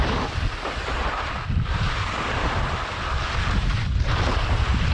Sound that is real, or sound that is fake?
real